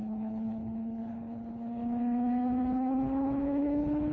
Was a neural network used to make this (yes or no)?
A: yes